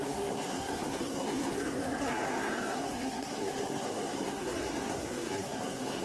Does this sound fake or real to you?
fake